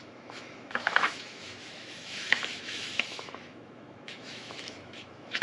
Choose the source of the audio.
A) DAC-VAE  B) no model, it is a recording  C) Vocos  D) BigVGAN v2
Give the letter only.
A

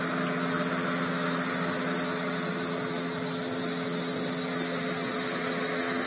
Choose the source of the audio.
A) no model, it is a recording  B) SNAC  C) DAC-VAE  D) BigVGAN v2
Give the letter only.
A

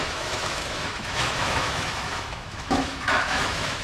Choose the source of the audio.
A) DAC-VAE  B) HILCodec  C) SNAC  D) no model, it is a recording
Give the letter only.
A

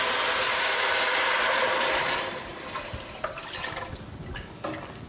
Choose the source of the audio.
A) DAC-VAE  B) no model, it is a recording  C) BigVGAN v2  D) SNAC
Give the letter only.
B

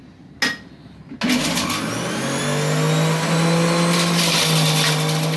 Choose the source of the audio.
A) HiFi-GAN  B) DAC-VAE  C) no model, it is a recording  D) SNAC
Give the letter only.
C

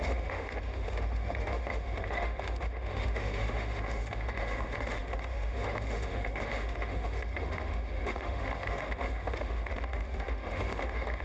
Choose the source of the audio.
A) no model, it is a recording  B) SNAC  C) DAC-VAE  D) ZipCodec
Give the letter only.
C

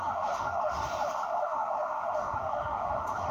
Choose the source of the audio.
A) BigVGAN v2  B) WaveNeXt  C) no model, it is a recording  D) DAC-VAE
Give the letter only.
D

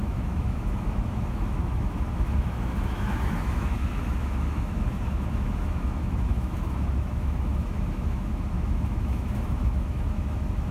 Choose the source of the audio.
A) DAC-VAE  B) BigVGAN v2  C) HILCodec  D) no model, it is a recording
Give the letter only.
A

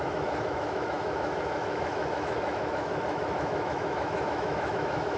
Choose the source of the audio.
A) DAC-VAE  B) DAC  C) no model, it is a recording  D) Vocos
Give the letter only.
A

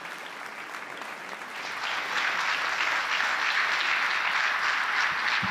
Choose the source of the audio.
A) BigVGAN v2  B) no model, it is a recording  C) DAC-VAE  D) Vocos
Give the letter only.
B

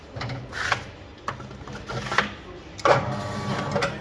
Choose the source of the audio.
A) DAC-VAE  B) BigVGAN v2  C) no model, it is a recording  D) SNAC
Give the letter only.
C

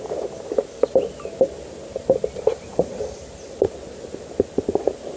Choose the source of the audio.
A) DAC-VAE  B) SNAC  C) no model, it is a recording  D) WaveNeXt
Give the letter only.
C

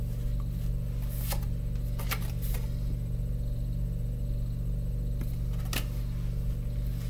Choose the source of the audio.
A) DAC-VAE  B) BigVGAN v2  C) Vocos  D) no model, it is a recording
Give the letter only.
D